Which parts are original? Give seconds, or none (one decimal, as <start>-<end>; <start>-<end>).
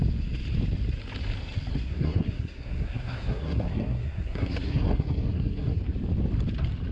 0.0-1.7; 5.8-6.9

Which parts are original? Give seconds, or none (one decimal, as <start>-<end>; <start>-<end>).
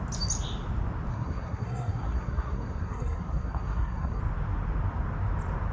0.0-1.1; 4.2-5.7